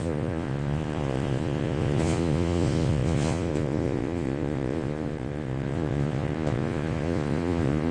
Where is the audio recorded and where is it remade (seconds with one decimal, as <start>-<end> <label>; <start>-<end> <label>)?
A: 0.0-7.9 remade